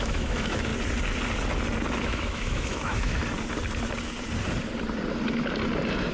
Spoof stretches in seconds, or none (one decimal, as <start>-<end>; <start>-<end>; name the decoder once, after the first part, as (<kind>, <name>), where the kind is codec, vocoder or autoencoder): 0.0-0.7 (autoencoder, DAC-VAE); 2.0-3.2